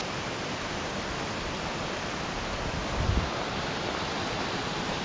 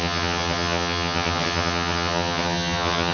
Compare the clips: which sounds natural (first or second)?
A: first